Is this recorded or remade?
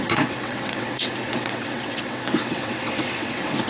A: remade